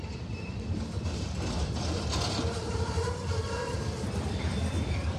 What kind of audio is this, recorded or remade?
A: remade